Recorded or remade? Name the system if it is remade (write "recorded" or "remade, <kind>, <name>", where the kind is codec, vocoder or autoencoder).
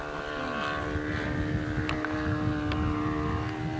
recorded